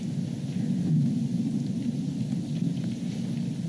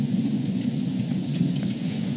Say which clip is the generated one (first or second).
second